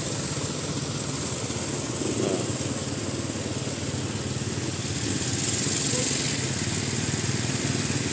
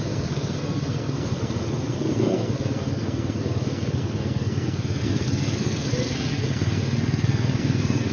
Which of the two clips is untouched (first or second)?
first